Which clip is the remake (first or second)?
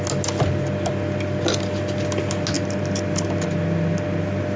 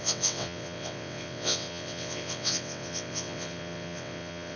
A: second